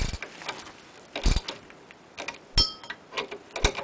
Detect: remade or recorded recorded